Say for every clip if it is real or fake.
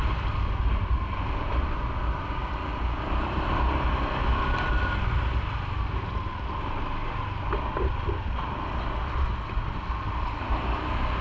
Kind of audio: real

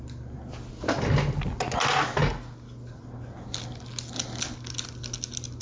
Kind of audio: real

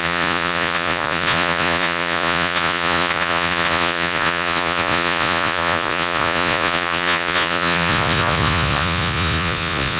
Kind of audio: fake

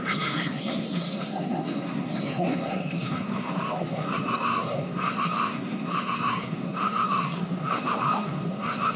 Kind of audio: fake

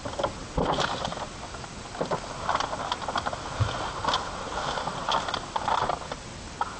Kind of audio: real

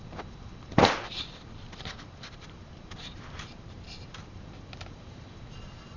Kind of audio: fake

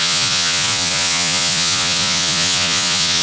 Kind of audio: fake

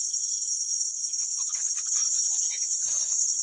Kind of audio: fake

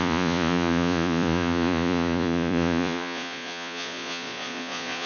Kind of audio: fake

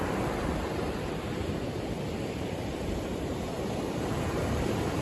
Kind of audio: fake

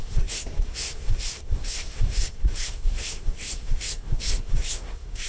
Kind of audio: fake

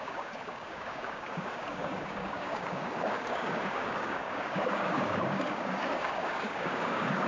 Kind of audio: fake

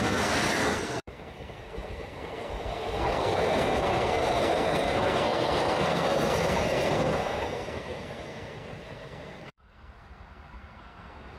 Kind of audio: fake